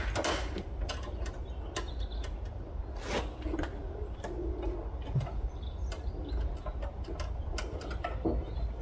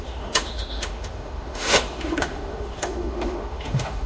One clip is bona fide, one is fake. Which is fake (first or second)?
second